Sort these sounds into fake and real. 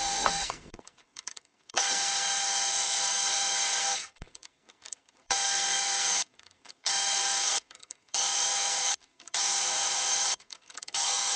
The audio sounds fake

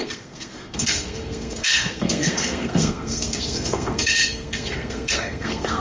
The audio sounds fake